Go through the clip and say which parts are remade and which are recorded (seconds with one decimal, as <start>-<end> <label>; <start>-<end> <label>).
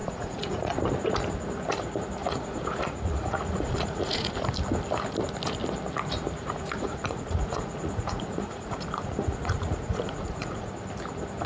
0.0-0.8 remade; 0.8-2.2 recorded; 2.2-4.3 remade; 4.3-6.4 recorded; 6.4-10.7 remade; 10.7-11.5 recorded